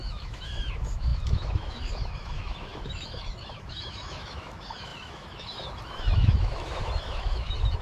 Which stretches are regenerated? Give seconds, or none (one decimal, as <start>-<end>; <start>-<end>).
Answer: 0.0-7.8